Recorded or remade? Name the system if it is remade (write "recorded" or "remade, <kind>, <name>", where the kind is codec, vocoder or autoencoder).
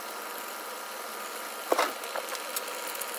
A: recorded